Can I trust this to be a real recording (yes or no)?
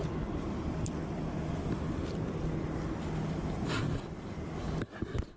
yes